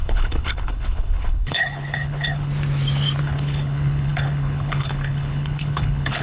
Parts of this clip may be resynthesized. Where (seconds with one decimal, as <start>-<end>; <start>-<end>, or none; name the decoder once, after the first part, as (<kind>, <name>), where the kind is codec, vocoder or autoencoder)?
0.0-2.5 (codec, HILCodec); 3.2-6.2